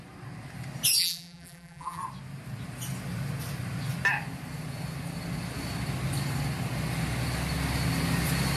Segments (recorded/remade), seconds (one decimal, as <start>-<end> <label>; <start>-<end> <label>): 0.0-1.0 recorded; 1.0-2.0 remade; 2.0-8.6 recorded